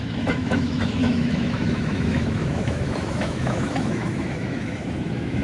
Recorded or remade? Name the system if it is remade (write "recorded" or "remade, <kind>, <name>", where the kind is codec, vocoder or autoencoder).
remade, autoencoder, DAC-VAE